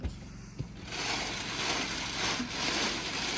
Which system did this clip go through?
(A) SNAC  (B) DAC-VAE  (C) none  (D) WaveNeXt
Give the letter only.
C